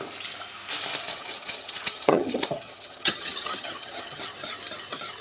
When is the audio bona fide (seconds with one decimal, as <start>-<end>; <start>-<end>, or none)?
0.0-1.1; 4.2-5.2